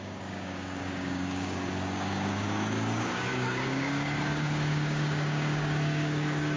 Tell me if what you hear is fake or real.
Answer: fake